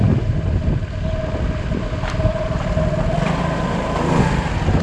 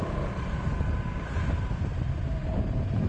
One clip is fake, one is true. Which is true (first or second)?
second